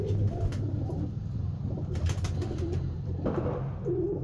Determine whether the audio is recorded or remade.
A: remade